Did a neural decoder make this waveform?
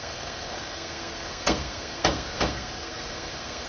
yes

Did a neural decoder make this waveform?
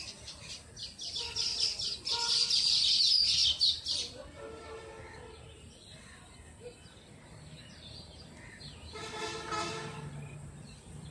no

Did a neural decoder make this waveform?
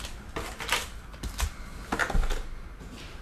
no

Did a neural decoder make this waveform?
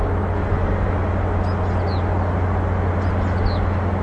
no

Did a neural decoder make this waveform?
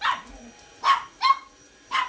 no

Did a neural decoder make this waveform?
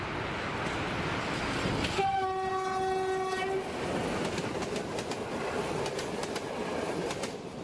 no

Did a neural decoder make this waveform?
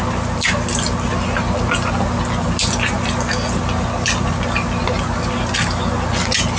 no